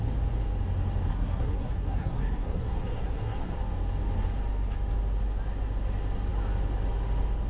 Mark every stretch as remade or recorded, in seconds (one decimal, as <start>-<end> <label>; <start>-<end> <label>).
0.0-1.1 recorded; 1.1-3.5 remade; 3.5-7.5 recorded